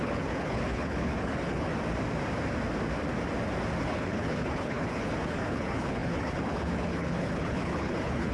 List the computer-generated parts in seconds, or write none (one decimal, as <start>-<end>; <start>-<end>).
0.0-1.7; 3.8-8.3

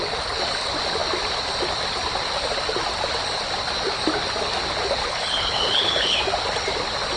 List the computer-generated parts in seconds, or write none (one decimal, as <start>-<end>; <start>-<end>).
5.0-6.2

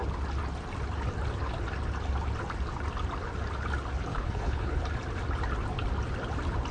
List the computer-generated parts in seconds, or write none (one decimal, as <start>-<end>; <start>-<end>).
4.1-4.8

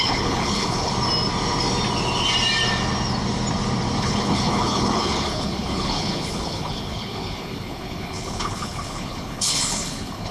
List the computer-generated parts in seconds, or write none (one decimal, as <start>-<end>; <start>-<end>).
0.0-0.9; 4.0-10.3

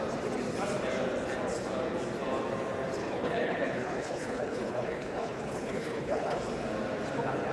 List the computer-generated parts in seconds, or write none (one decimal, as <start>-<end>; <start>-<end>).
3.0-6.4

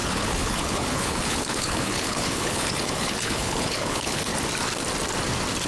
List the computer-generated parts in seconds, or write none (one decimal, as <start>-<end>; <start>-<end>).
0.0-4.3

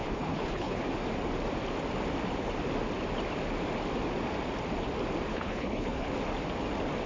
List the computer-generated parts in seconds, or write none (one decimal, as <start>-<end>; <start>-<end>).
0.0-0.8; 5.3-6.1

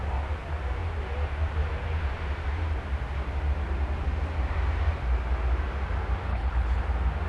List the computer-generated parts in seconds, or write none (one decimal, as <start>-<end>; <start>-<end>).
6.3-6.8